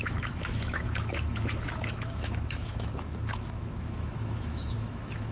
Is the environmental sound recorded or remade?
remade